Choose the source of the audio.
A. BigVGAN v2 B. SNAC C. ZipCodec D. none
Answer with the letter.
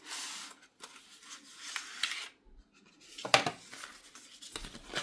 D